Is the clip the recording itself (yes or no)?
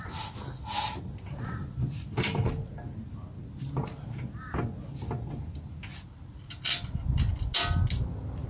yes